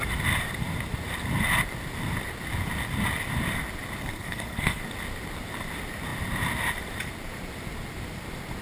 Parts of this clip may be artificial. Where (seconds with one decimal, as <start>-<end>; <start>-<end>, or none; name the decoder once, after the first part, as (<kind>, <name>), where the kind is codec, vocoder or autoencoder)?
4.0-4.8 (codec, SNAC)

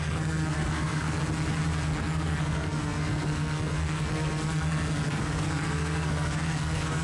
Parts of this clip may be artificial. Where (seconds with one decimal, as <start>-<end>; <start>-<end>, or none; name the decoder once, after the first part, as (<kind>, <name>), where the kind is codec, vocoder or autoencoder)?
0.0-1.2 (codec, SNAC); 1.9-7.0

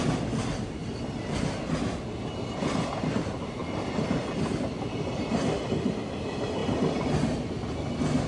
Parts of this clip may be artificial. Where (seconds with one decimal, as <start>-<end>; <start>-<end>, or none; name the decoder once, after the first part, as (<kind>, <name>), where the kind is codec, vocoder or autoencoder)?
none

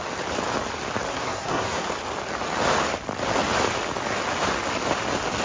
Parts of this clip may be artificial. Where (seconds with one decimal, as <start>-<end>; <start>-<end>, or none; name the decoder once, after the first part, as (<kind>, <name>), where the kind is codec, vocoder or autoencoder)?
1.1-1.9 (codec, SNAC)

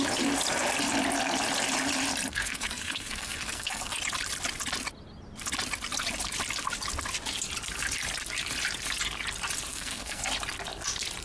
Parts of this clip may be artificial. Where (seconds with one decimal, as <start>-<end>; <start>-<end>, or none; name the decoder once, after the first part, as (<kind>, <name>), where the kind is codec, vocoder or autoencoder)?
2.3-4.0 (codec, SNAC); 9.7-10.2

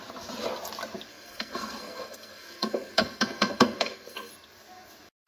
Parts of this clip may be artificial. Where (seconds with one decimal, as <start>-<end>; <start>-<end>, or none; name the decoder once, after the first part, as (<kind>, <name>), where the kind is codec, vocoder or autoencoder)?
1.1-4.3 (codec, SNAC)

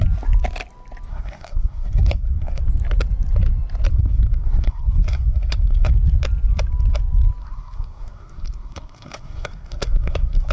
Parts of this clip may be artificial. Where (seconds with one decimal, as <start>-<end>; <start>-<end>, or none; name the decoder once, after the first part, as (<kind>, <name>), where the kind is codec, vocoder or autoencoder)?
1.1-2.6 (codec, SNAC); 3.9-5.9; 7.4-10.5